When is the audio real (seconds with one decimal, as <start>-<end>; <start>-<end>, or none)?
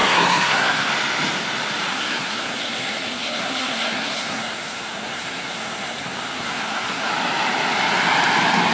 0.9-1.9; 7.1-8.7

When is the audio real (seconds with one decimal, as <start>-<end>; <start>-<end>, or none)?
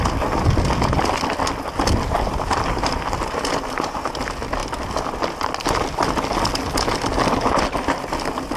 0.0-8.6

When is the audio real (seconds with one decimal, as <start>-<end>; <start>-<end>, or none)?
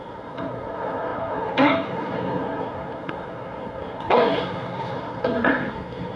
none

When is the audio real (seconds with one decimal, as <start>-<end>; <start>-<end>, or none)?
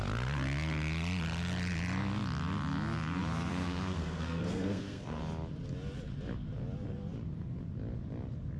0.0-3.5; 5.2-8.6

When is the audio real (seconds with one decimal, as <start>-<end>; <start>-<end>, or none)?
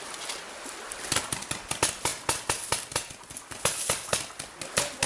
0.0-5.1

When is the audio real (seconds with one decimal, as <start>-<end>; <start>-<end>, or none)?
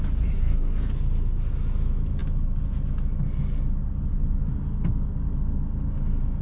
0.0-0.4; 0.9-6.4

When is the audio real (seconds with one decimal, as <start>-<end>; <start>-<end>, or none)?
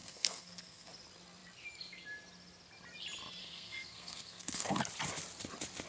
0.9-3.4; 4.8-5.9